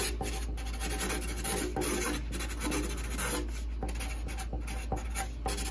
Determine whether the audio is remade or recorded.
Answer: recorded